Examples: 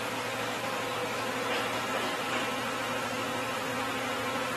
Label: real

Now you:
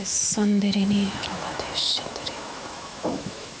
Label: fake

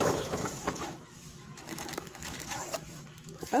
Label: fake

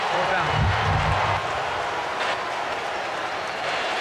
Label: real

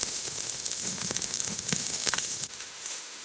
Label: fake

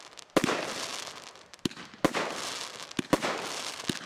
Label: real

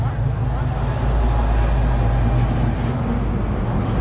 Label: real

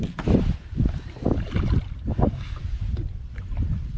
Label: real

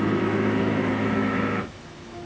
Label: fake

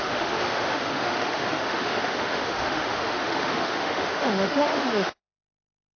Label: fake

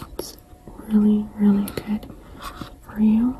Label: real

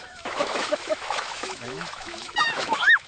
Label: fake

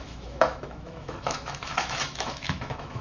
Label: fake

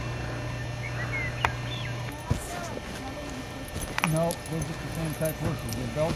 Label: real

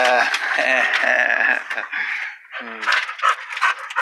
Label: real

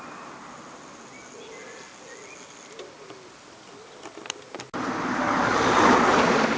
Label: real